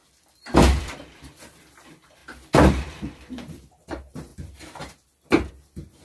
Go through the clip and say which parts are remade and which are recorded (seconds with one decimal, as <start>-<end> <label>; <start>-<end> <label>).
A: 0.0-0.8 recorded; 0.8-6.0 remade